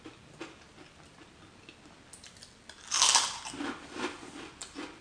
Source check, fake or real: real